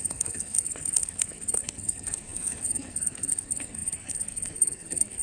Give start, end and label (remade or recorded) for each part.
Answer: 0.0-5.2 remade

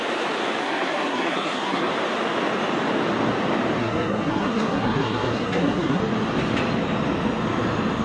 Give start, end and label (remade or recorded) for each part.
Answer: 0.0-0.6 recorded; 0.6-1.9 remade; 1.9-3.8 recorded; 3.8-6.0 remade; 6.0-8.0 recorded

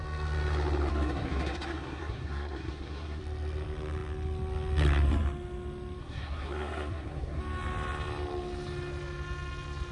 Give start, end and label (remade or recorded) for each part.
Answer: 0.0-0.9 recorded; 0.9-3.2 remade; 3.2-6.0 recorded; 6.0-7.4 remade; 7.4-9.9 recorded